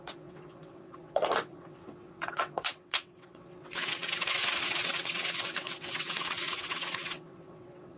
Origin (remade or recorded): remade